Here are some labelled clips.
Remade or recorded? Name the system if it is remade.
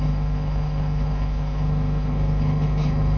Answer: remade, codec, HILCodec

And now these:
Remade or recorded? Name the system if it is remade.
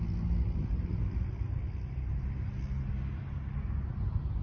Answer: recorded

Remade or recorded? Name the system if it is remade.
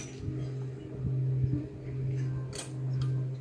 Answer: recorded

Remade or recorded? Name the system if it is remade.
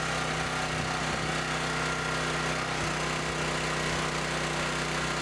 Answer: recorded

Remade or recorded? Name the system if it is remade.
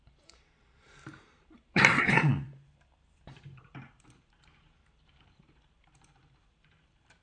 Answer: remade, vocoder, BigVGAN v2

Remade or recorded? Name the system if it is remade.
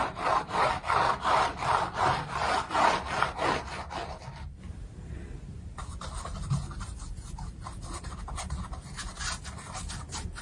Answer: recorded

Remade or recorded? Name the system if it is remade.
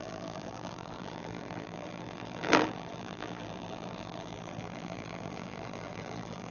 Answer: remade, vocoder, BigVGAN v2